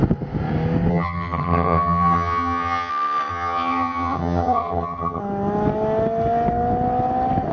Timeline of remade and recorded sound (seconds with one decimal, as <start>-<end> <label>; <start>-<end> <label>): 0.0-0.9 recorded; 0.9-2.9 remade; 2.9-3.3 recorded; 3.3-5.2 remade; 5.2-7.5 recorded